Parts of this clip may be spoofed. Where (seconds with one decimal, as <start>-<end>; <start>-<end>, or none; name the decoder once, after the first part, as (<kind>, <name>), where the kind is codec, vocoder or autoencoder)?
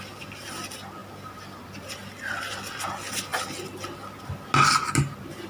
none